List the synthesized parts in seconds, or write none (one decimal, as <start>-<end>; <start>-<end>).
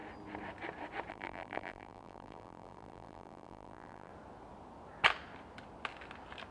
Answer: 1.1-4.1